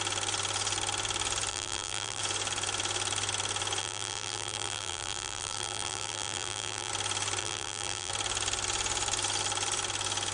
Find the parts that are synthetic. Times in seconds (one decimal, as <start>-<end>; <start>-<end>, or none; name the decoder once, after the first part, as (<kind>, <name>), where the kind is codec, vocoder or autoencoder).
1.5-2.2 (vocoder, BigVGAN v2); 3.8-6.9; 7.4-8.1